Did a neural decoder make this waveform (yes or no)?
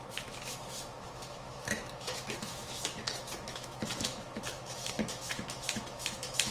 yes